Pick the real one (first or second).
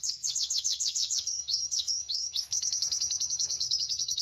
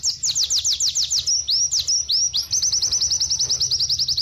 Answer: second